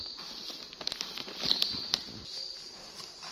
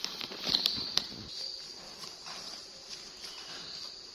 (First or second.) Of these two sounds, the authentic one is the first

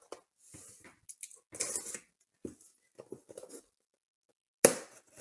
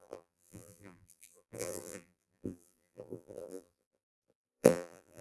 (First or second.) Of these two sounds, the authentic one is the first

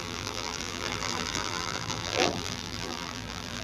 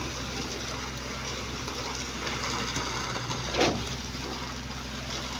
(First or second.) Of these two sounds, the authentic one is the second